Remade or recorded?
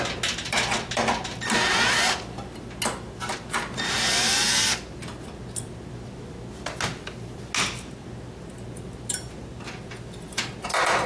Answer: recorded